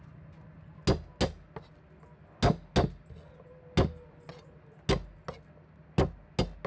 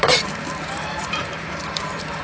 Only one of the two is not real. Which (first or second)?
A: second